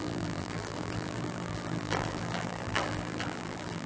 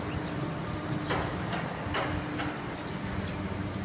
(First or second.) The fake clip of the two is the first